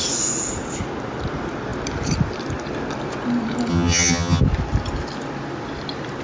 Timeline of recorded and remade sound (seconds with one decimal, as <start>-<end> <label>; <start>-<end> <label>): 0.0-3.7 recorded; 3.7-4.4 remade; 4.4-6.2 recorded